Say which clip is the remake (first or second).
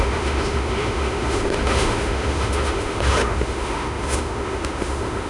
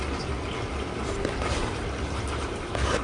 first